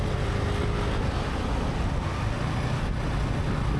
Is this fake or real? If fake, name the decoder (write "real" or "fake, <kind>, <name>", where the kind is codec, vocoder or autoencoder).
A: real